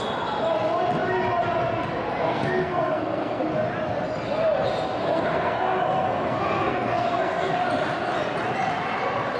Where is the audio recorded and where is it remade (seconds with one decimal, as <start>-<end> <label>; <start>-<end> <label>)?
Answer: 0.0-2.2 recorded; 2.2-3.4 remade; 3.4-5.0 recorded; 5.0-7.5 remade; 7.5-9.4 recorded